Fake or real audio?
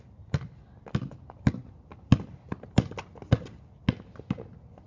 real